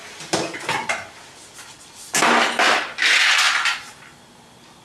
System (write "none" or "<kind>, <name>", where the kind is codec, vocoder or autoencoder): none